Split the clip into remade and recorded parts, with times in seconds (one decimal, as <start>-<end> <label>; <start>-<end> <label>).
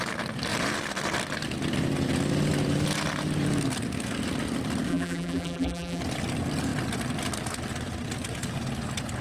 0.0-4.9 recorded; 4.9-6.0 remade; 6.0-9.2 recorded